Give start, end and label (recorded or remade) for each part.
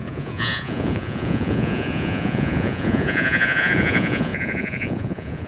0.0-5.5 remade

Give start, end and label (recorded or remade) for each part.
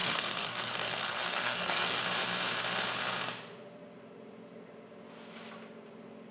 0.0-2.0 remade; 2.0-6.3 recorded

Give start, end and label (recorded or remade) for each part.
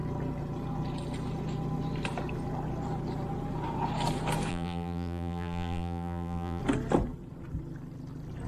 0.0-4.5 recorded; 4.5-6.6 remade; 6.6-8.5 recorded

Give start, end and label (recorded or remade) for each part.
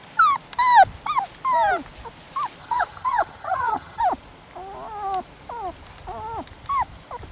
0.0-2.6 recorded; 2.6-4.0 remade; 4.0-7.3 recorded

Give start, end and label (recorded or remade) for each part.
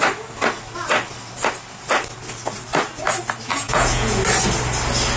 0.0-3.5 recorded; 3.5-4.2 remade; 4.2-5.2 recorded